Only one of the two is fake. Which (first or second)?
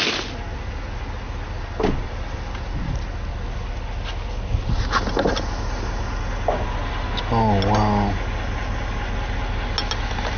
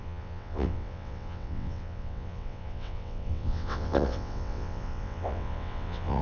second